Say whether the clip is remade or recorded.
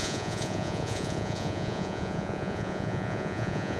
remade